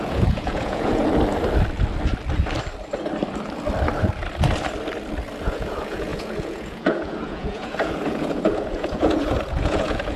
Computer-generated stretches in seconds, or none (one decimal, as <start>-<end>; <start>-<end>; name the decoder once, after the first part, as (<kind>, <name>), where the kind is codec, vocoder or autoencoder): 0.0-1.0 (vocoder, Vocos); 5.4-10.2